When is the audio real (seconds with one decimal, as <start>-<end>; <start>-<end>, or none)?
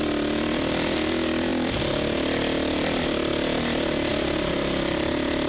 0.0-5.5